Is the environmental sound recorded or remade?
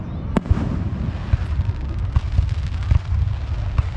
recorded